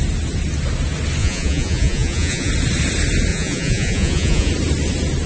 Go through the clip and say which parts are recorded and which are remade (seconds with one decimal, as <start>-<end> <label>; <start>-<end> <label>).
0.0-1.2 recorded; 1.2-2.5 remade; 2.5-3.3 recorded; 3.3-4.5 remade; 4.5-5.3 recorded